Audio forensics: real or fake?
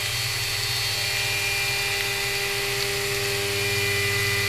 real